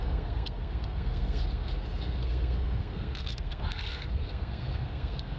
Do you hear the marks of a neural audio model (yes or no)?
yes